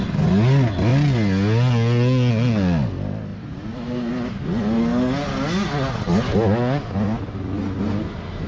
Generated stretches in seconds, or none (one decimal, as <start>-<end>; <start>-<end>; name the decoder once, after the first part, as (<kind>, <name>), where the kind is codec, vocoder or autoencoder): 3.3-4.1 (vocoder, BigVGAN v2)